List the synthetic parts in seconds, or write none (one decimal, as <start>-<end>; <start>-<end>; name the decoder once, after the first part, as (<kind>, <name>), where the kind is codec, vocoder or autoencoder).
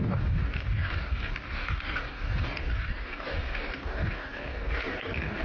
0.0-5.4 (codec, DAC)